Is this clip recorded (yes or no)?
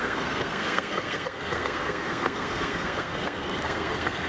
no